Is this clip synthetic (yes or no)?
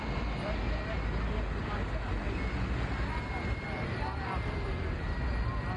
no